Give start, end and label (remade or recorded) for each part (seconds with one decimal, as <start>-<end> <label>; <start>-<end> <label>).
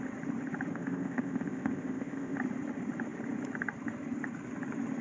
0.0-0.7 recorded; 0.7-2.4 remade; 2.4-5.0 recorded